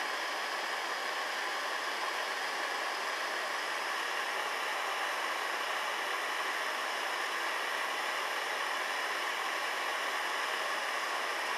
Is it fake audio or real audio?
real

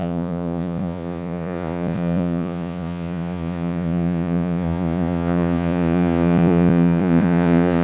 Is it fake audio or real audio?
fake